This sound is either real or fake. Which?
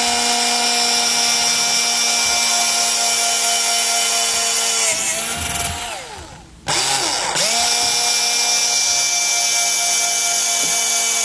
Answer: real